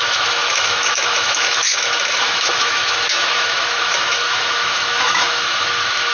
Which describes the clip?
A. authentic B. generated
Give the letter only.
B